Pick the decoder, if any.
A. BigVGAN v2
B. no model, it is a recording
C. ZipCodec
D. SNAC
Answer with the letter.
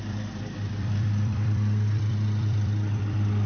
A